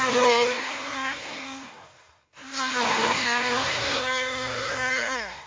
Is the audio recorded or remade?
remade